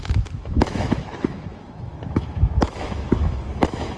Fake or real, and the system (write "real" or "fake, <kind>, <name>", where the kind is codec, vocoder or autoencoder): fake, autoencoder, DAC-VAE